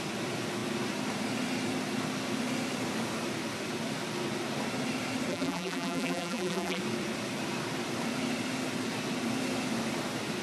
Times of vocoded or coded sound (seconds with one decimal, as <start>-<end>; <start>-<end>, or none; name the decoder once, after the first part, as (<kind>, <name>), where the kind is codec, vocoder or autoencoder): 5.3-6.8 (vocoder, BigVGAN v2)

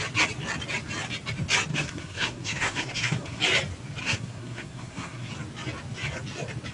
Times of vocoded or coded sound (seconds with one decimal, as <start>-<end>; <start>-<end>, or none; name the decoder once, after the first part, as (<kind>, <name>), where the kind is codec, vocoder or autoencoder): 1.7-3.4 (codec, SNAC); 4.0-5.3

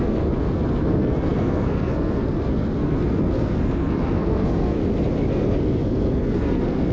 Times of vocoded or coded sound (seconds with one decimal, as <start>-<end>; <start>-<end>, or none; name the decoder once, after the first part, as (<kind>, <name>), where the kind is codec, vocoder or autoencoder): 0.0-4.8 (codec, SNAC); 5.3-6.9

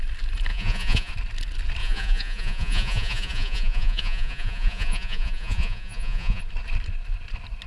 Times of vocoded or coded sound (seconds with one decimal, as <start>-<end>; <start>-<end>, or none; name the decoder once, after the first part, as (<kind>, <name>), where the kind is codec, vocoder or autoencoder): 0.5-1.1 (vocoder, Vocos); 1.8-6.4

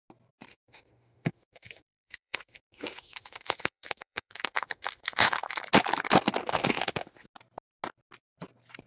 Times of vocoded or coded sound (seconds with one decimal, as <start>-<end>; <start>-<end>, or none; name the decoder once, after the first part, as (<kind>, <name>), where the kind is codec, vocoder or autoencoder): 0.5-5.6 (autoencoder, DAC-VAE); 6.4-7.3

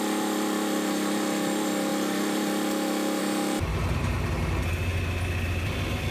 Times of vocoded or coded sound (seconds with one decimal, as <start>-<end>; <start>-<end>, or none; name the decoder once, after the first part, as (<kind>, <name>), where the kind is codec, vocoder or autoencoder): 3.7-4.3 (vocoder, BigVGAN v2)

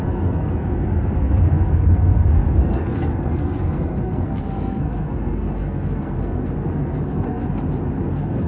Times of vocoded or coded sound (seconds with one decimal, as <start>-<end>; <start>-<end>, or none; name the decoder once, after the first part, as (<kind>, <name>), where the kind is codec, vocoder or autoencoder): 0.0-7.4 (codec, SNAC); 8.1-8.5

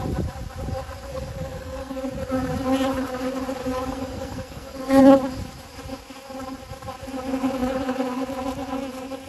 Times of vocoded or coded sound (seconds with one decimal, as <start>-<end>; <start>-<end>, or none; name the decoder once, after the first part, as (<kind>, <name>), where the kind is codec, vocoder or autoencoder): 1.1-2.1 (codec, SNAC); 3.6-5.0